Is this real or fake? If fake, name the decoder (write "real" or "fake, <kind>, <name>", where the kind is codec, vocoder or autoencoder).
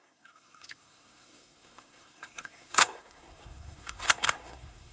fake, codec, SNAC